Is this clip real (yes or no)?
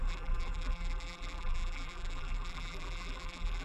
no